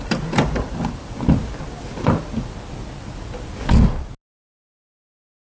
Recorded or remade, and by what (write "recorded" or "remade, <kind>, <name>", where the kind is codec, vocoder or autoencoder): recorded